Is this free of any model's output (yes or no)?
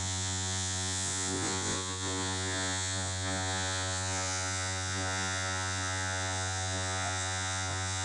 no